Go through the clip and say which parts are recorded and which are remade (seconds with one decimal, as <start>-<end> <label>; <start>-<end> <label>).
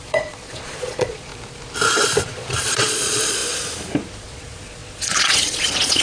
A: 0.0-1.3 remade; 1.3-2.2 recorded; 2.2-3.4 remade; 3.4-4.1 recorded; 4.1-6.0 remade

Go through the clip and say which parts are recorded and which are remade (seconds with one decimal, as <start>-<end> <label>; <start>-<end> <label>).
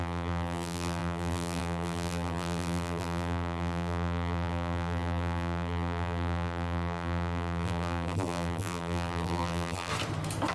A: 0.0-9.9 remade; 9.9-10.5 recorded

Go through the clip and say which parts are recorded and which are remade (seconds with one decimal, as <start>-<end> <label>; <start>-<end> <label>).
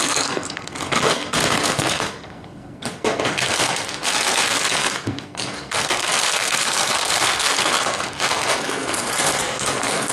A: 0.0-10.1 remade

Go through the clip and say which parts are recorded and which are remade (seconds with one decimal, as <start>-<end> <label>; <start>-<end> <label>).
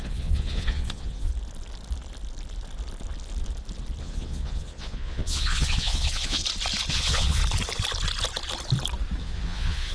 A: 0.0-1.3 remade; 1.3-4.0 recorded; 4.0-6.4 remade; 6.4-6.9 recorded; 6.9-7.4 remade; 7.4-9.2 recorded; 9.2-9.9 remade